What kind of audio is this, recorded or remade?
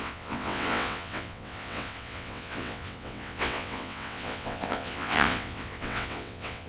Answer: remade